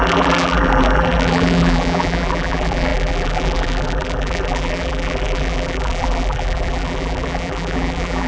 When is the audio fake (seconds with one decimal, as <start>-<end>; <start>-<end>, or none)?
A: 0.0-8.3